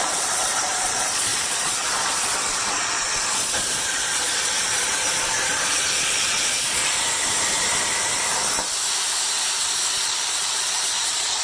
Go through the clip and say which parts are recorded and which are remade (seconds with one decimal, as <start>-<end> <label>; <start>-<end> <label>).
0.0-6.8 remade; 6.8-9.5 recorded; 9.5-11.4 remade